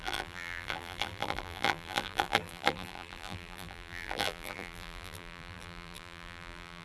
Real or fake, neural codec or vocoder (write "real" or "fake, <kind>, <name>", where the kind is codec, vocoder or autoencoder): fake, vocoder, BigVGAN v2